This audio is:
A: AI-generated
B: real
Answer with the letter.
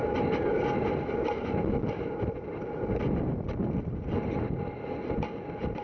B